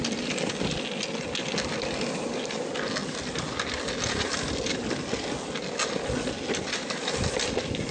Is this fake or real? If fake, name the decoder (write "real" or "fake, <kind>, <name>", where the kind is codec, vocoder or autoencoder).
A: real